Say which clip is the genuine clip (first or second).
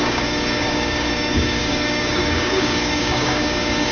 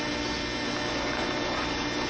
second